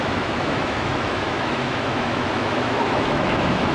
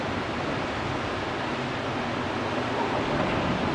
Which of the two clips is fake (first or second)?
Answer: first